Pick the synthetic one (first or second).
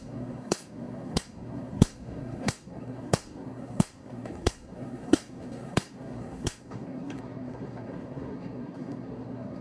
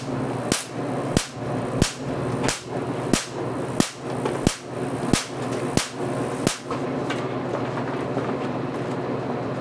first